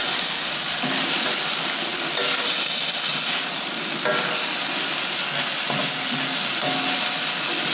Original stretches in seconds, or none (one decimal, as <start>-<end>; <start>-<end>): 0.0-7.7